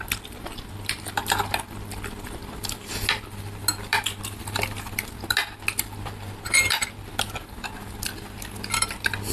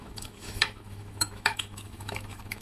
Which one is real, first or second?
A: first